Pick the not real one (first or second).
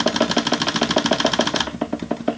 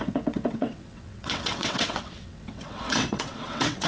second